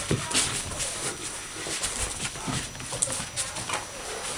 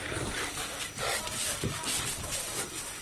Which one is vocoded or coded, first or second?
second